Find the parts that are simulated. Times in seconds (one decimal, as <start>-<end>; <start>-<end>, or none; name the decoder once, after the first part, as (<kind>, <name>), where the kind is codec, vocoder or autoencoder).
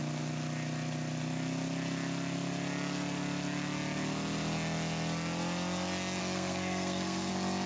6.2-7.3 (codec, SNAC)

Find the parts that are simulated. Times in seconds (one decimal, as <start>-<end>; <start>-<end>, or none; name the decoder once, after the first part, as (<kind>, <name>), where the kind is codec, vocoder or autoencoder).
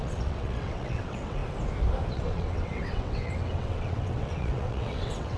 0.0-1.4 (vocoder, WaveNeXt); 2.1-5.4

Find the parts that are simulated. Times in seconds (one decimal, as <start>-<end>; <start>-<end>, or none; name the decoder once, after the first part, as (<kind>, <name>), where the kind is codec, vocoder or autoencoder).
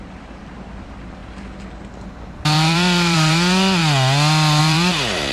0.0-1.2 (vocoder, BigVGAN v2); 2.2-3.8; 4.6-5.3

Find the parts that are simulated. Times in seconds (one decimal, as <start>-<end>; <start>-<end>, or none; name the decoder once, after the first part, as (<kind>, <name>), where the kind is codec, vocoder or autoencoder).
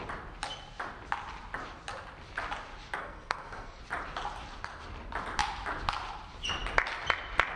3.0-3.8 (codec, SNAC)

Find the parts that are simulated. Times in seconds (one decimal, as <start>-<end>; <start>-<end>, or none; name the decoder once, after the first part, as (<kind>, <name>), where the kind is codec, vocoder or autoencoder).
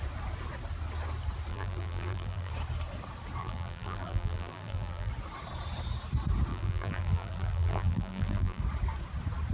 1.5-2.5 (vocoder, BigVGAN v2); 3.4-5.1; 6.5-8.6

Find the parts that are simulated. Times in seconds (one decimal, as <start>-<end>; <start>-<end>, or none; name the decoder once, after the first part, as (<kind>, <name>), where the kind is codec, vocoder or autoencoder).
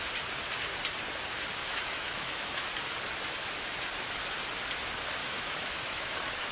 1.6-2.7 (autoencoder, DAC-VAE); 5.2-6.5